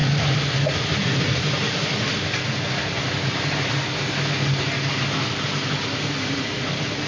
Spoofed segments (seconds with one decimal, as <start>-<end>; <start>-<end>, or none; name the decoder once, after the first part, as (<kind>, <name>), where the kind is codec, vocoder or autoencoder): none